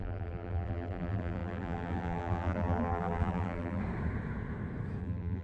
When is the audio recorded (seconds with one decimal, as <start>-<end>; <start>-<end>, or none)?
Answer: 3.8-5.0